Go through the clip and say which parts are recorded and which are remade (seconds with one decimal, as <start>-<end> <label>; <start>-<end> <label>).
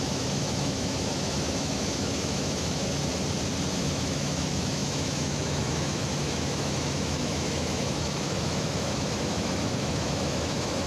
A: 0.0-3.1 remade; 3.1-3.7 recorded; 3.7-10.9 remade